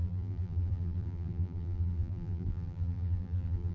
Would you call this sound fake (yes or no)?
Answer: yes